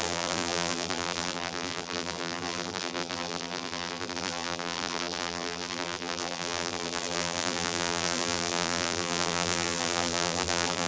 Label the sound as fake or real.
fake